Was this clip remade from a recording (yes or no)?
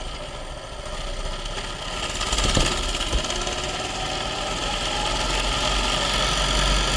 no